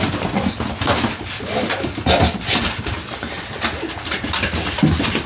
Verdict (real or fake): real